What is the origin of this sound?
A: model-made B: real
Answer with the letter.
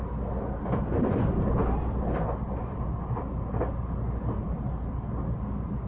B